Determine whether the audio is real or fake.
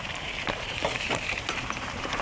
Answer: fake